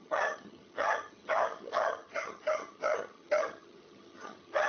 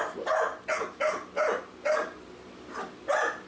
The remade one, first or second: first